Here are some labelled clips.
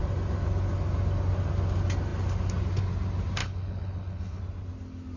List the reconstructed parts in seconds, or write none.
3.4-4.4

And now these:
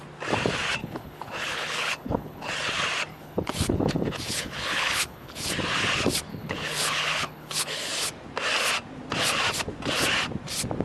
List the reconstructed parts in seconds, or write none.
0.8-2.5; 3.1-5.5; 6.3-7.9

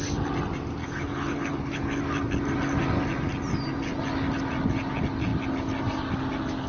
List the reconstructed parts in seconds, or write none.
0.8-2.0

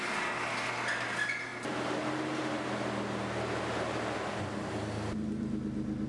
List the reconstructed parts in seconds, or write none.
none

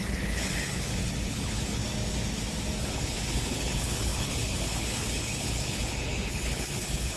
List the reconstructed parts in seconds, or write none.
0.0-1.8; 2.8-7.2

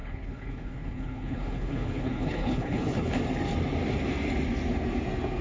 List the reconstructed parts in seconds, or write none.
0.0-3.2